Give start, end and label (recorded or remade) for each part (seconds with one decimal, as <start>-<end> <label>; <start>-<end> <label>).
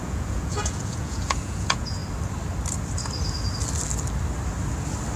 0.0-2.0 remade; 2.0-5.2 recorded